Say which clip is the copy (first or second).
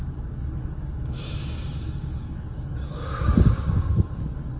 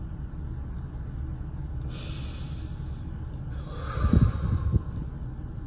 first